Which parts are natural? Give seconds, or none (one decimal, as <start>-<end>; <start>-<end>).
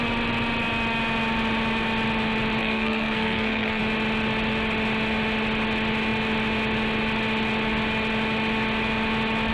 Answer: 0.0-2.6; 3.8-9.5